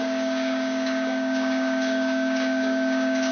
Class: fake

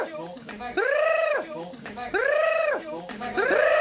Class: fake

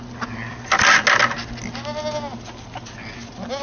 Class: real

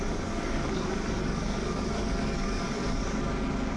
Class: fake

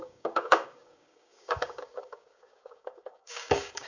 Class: fake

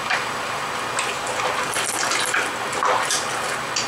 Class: real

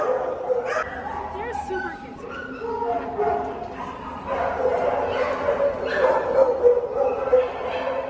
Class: real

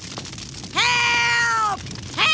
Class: real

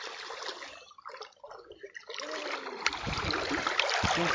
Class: real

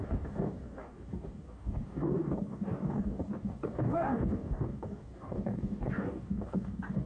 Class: fake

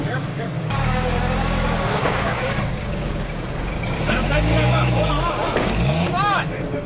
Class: fake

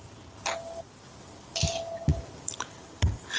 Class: real